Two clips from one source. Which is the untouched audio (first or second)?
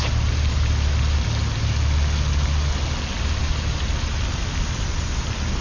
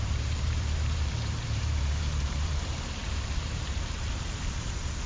first